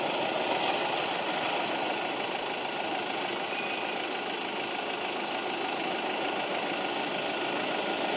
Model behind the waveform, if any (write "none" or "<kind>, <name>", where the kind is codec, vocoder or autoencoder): none